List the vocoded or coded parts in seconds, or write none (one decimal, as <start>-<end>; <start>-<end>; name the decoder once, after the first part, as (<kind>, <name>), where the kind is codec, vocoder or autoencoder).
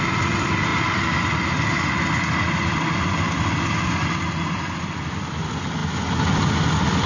none